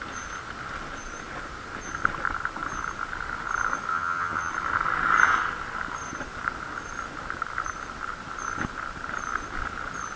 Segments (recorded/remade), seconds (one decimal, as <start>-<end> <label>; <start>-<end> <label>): 0.0-3.9 recorded; 3.9-4.5 remade; 4.5-10.2 recorded